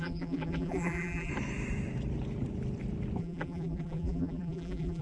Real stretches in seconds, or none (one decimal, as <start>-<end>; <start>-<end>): 1.3-3.2